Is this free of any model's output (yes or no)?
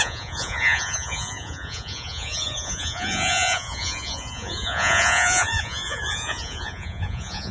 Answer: no